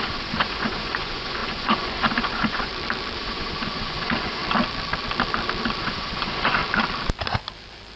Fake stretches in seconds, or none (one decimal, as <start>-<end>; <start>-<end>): 0.0-2.7; 3.2-4.4; 5.8-6.6